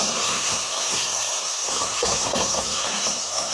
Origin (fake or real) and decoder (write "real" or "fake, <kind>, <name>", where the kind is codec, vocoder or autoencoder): fake, codec, SNAC